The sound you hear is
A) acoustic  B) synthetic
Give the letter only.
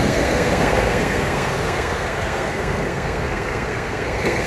B